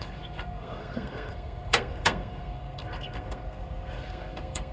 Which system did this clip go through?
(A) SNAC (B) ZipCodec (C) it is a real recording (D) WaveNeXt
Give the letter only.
A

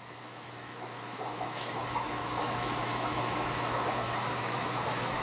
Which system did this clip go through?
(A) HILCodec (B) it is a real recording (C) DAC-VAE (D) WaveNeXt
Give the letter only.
C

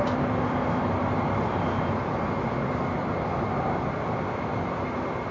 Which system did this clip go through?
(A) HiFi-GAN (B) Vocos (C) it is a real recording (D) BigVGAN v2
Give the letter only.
C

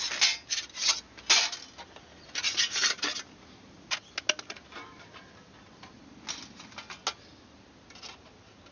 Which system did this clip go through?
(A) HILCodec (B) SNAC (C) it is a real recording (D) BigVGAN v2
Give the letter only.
C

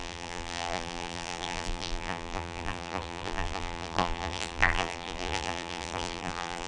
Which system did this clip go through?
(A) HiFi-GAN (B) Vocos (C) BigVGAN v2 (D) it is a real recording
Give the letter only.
C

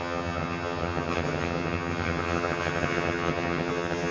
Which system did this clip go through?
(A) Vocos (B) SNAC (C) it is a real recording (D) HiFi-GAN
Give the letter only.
D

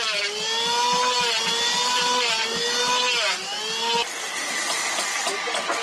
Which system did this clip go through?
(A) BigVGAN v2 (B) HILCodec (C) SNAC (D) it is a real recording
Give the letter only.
D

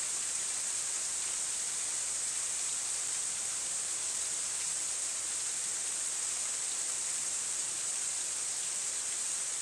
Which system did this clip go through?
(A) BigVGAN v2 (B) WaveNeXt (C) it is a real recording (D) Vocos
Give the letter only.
A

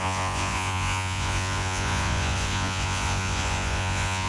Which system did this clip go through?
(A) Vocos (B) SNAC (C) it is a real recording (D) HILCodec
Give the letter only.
A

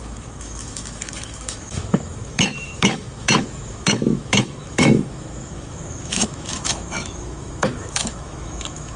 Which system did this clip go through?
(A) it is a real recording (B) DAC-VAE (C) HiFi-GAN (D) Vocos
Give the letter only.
B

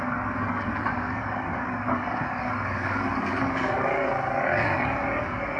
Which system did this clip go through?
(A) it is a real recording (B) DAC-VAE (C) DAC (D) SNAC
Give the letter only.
C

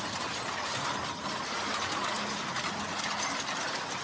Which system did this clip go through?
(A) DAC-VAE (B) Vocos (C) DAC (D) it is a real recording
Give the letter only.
D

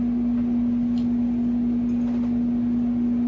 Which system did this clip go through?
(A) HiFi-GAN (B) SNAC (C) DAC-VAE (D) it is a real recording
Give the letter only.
D